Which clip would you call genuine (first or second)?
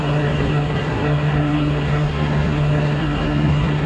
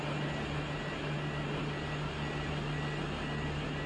second